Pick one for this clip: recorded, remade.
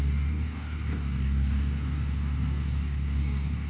remade